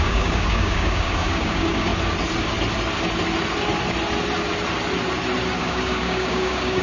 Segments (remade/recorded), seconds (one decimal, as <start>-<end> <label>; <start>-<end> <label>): 0.0-1.9 remade; 1.9-5.6 recorded; 5.6-6.8 remade